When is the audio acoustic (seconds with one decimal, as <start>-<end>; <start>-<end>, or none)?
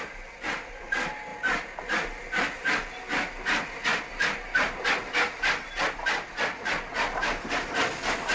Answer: 0.0-8.3